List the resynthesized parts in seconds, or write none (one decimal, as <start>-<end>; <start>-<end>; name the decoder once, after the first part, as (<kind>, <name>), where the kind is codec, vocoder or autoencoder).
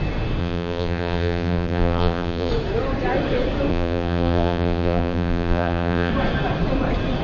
0.4-2.5 (vocoder, BigVGAN v2); 3.7-6.1